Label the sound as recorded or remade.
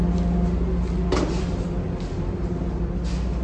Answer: recorded